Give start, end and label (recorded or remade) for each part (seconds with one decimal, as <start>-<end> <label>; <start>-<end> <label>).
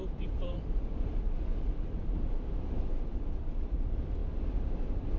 0.0-4.2 remade; 4.2-5.2 recorded